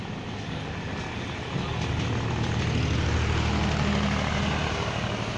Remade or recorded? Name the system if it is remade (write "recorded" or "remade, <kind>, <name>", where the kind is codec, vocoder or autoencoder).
recorded